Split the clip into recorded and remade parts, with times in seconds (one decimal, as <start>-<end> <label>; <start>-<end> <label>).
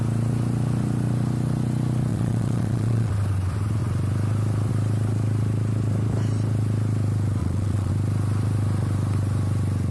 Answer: 0.0-2.1 recorded; 2.1-3.1 remade; 3.1-7.4 recorded; 7.4-7.9 remade; 7.9-9.9 recorded